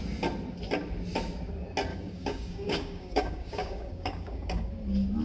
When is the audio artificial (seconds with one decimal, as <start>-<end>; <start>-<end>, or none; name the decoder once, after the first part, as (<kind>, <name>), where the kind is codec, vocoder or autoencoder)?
1.9-4.7 (codec, DAC)